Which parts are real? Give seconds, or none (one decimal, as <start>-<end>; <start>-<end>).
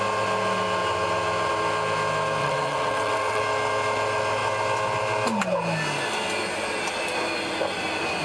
0.0-2.4; 3.4-8.2